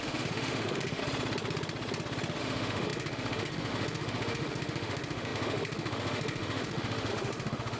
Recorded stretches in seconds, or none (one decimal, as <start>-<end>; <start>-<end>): 1.0-2.4